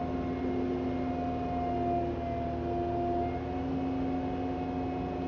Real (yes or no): yes